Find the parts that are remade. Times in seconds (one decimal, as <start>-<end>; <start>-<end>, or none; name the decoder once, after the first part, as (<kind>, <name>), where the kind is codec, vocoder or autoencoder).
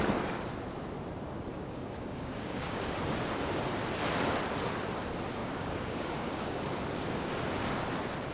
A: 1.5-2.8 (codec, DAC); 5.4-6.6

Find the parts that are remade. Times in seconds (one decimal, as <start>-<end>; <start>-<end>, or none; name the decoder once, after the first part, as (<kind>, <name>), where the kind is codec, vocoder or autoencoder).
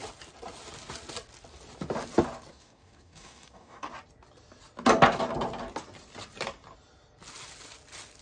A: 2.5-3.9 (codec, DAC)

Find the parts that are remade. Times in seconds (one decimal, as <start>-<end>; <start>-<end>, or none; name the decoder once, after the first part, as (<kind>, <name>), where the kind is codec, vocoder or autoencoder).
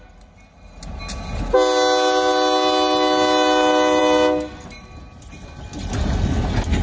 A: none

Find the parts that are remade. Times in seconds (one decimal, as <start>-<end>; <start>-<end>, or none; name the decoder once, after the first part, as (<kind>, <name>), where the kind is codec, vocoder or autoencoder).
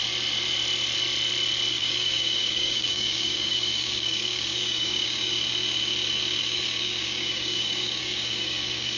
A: 1.7-5.3 (codec, DAC); 6.4-9.0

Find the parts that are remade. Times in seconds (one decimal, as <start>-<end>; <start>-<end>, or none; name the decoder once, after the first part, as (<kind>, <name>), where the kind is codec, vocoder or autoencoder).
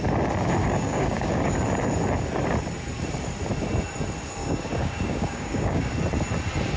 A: 0.6-1.6 (codec, DAC); 4.4-5.9